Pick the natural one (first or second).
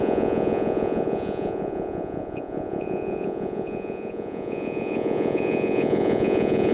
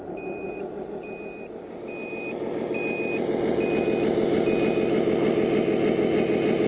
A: second